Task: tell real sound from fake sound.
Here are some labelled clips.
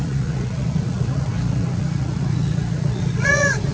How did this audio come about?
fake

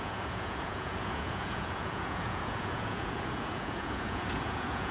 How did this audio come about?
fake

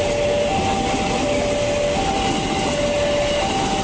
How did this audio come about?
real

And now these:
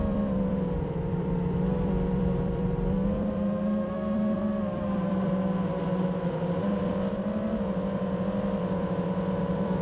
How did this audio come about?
fake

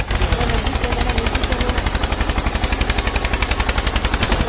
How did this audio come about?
real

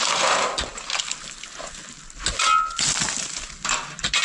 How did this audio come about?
real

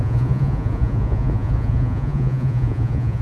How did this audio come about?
fake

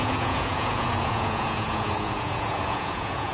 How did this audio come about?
fake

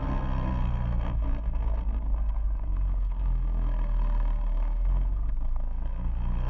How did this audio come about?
fake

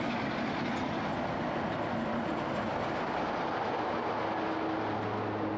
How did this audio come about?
real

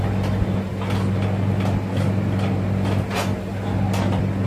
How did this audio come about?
real